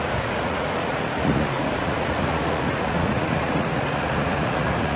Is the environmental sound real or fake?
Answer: fake